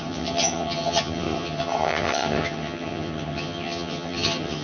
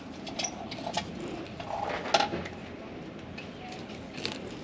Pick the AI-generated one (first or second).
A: first